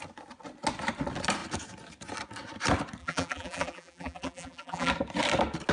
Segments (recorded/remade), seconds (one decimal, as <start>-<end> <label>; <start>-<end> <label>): 0.0-3.0 recorded; 3.0-4.9 remade; 4.9-5.7 recorded